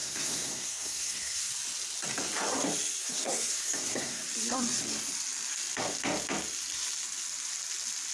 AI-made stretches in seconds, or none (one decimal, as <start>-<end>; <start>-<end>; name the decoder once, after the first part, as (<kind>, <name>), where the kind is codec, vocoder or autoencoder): 0.0-1.5 (codec, SNAC); 3.0-4.2